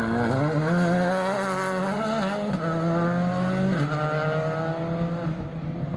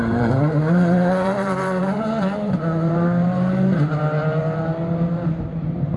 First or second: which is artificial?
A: second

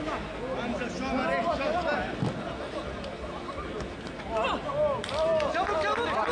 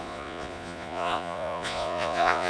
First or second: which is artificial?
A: second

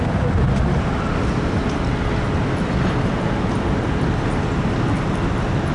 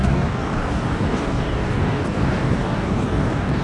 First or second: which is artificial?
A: second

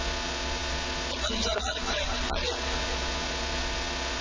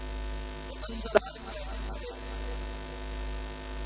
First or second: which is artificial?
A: first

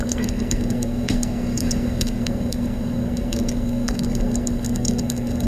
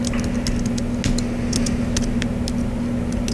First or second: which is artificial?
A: first